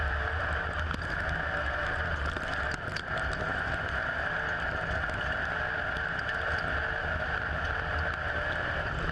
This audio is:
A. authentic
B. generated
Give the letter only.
A